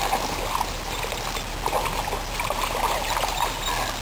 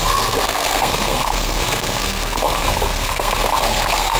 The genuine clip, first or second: first